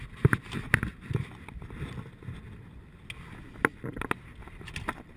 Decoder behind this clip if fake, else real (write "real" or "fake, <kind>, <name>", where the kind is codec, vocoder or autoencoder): real